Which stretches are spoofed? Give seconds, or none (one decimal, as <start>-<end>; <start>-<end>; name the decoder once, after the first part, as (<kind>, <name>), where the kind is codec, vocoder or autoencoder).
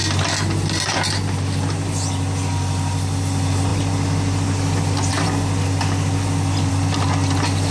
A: none